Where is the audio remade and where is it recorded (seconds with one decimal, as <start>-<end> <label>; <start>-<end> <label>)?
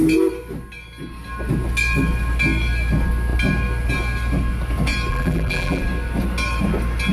0.0-5.1 recorded; 5.1-5.8 remade; 5.8-7.1 recorded